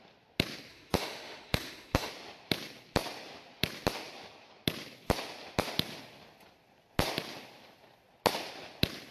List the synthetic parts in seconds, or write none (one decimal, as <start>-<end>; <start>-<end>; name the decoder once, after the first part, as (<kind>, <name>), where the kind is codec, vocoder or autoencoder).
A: 0.7-2.1 (autoencoder, DAC-VAE)